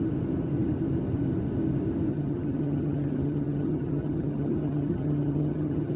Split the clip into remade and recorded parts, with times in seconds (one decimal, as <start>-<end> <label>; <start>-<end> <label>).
0.0-2.1 recorded; 2.1-6.0 remade